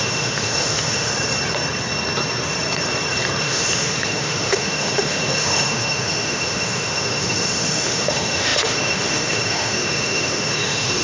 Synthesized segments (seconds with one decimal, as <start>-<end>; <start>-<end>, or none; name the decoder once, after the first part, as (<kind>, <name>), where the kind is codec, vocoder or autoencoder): 0.0-1.1 (autoencoder, DAC-VAE); 3.4-11.0